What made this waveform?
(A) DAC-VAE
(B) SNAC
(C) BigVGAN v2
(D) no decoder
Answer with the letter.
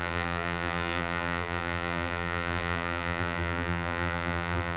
C